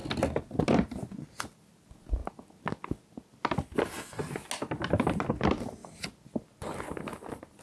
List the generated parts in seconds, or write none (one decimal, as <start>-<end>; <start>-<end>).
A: none